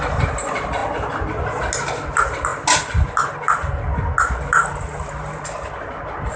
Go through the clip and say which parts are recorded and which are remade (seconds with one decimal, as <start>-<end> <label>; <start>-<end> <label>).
0.0-6.4 recorded